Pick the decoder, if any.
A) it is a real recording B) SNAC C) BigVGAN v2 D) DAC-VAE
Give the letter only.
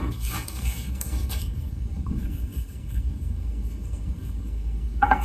B